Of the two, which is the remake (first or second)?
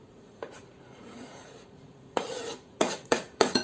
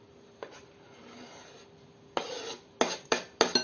first